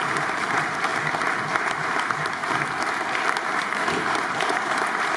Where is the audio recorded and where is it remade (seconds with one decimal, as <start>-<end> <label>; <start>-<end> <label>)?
0.0-0.9 remade; 0.9-1.6 recorded; 1.6-2.4 remade; 2.4-3.5 recorded; 3.5-5.2 remade